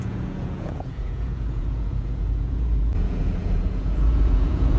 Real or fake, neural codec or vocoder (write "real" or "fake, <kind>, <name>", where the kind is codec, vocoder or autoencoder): fake, vocoder, Vocos